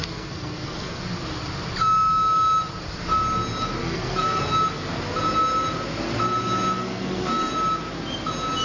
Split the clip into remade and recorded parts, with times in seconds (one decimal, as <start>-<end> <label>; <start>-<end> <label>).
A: 0.0-1.0 remade; 1.0-3.8 recorded; 3.8-4.4 remade; 4.4-6.8 recorded; 6.8-7.5 remade; 7.5-8.6 recorded